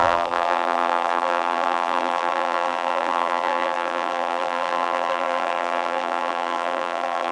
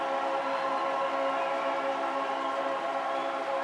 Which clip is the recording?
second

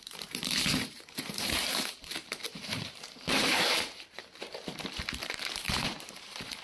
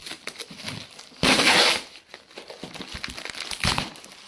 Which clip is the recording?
second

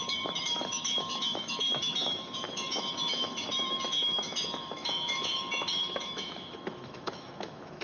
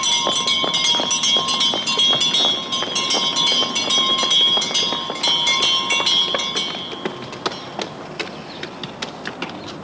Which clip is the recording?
second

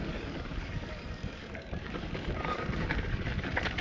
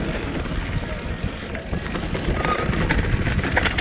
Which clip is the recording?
second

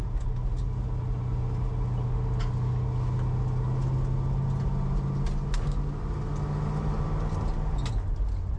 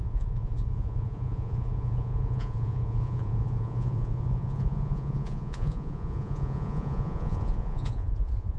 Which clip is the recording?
first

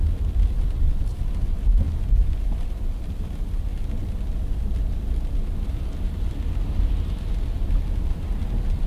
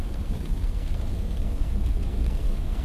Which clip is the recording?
first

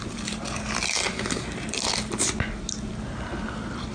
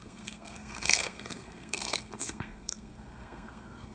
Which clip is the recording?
first